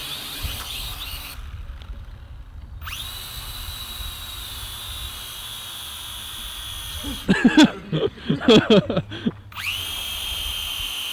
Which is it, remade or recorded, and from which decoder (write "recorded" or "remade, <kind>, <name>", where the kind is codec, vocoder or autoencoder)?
recorded